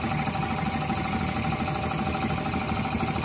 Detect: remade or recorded recorded